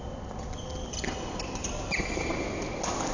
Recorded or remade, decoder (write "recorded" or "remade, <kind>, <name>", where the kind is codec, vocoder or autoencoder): recorded